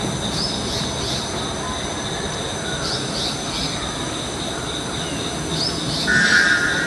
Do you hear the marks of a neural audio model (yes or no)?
no